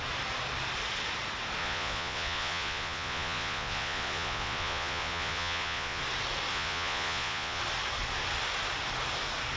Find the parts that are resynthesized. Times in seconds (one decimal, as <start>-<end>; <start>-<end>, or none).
1.6-6.0; 6.5-7.6